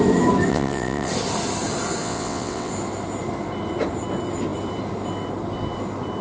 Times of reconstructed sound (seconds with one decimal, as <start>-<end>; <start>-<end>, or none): 0.5-1.1; 2.0-2.7